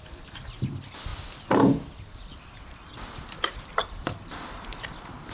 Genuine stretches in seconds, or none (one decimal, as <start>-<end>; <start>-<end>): 0.0-5.3